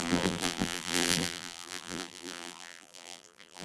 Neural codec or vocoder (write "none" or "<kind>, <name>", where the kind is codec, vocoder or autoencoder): vocoder, BigVGAN v2